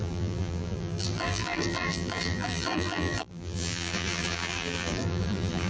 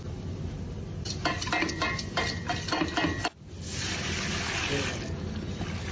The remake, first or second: first